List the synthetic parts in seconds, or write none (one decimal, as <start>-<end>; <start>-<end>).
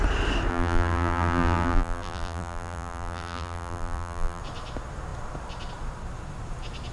0.5-4.4